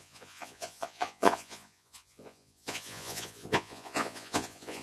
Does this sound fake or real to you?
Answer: fake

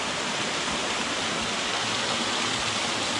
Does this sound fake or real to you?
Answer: real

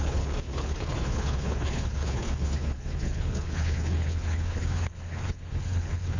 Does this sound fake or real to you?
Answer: fake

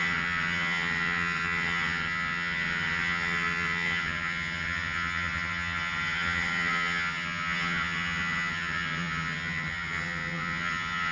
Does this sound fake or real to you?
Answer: fake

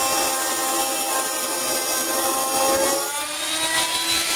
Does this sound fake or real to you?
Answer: real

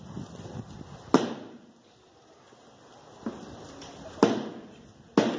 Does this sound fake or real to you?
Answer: real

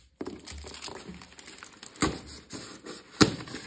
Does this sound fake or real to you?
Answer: real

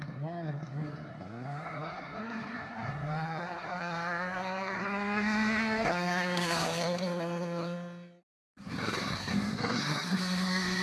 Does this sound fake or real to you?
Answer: fake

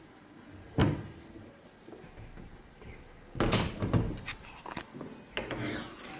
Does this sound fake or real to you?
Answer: real